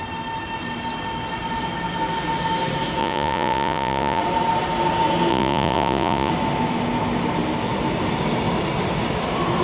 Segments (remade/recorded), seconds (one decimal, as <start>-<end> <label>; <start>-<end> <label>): 0.0-3.0 recorded; 3.0-4.2 remade; 4.2-5.3 recorded; 5.3-6.3 remade; 6.3-9.6 recorded